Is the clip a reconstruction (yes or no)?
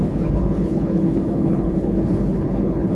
yes